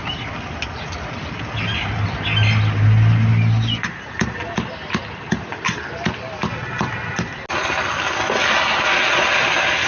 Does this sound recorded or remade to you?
recorded